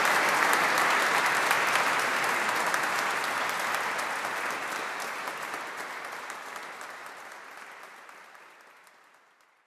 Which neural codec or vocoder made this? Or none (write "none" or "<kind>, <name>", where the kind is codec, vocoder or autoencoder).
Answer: none